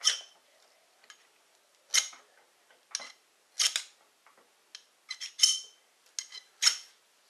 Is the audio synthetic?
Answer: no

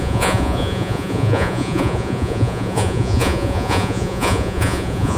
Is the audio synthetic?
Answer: yes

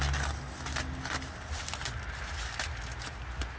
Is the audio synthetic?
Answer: no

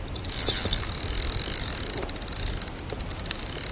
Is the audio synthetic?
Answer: no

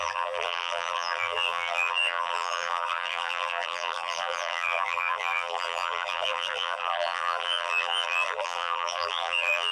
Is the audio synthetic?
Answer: yes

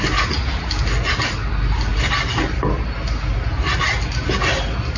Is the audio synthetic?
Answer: no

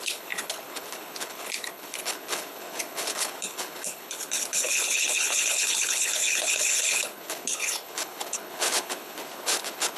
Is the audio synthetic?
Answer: yes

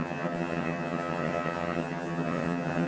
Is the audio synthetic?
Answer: yes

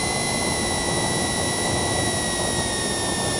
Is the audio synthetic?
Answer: no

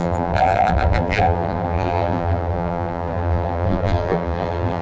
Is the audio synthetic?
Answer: yes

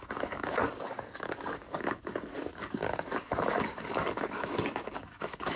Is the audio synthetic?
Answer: yes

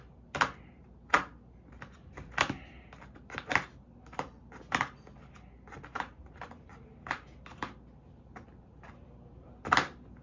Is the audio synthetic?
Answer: no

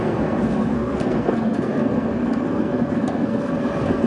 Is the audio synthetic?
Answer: yes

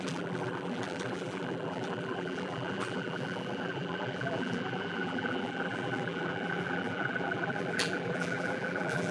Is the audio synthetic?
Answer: yes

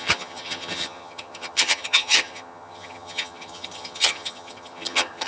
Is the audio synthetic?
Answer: yes